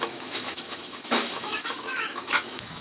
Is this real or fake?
fake